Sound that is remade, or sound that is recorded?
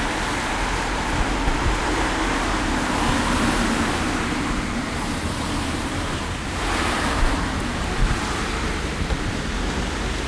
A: remade